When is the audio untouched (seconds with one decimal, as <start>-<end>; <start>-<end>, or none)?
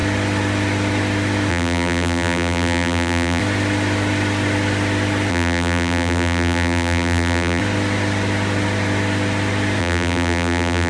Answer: 0.0-1.5; 3.4-5.3; 7.6-9.8